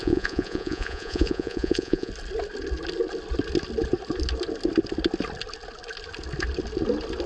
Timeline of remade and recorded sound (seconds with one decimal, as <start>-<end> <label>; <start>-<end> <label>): 0.0-2.1 remade; 2.1-7.3 recorded